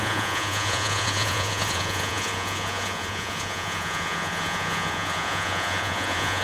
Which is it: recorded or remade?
remade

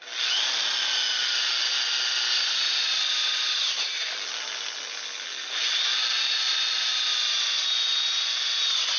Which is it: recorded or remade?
recorded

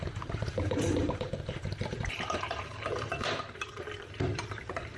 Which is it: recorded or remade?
remade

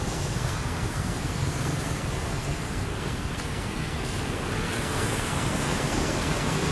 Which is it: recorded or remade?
remade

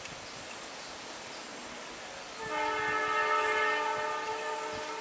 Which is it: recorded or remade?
recorded